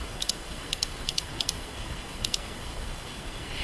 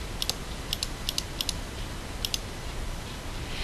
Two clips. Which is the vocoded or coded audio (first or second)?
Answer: first